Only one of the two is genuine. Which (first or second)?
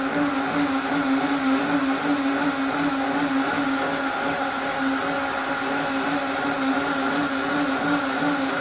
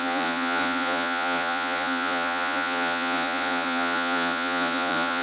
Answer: first